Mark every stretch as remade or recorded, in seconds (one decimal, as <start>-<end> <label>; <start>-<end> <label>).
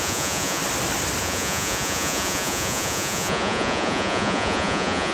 0.0-0.6 remade; 0.6-1.2 recorded; 1.2-5.1 remade